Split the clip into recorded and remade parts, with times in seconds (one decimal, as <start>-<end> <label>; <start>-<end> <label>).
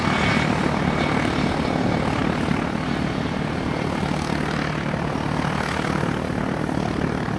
0.0-7.4 recorded